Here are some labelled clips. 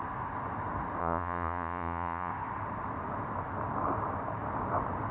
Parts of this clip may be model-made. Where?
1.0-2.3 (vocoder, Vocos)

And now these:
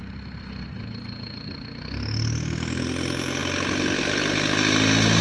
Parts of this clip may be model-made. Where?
none

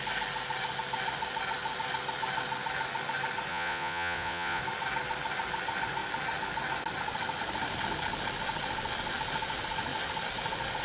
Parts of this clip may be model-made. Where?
3.5-4.6 (vocoder, Vocos)

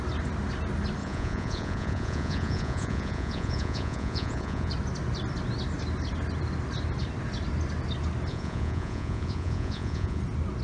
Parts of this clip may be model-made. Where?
1.0-4.7 (vocoder, Vocos); 8.3-10.2

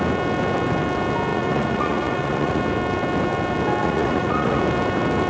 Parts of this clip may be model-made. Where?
1.3-2.6 (vocoder, Vocos); 3.8-4.6

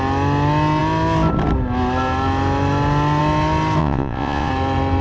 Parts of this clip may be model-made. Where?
3.8-4.5 (vocoder, Vocos)